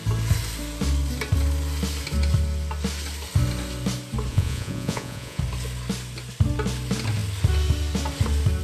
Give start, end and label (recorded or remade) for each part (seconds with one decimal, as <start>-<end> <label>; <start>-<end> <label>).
0.0-4.3 recorded; 4.3-5.4 remade; 5.4-8.6 recorded